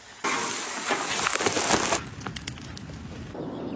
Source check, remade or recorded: recorded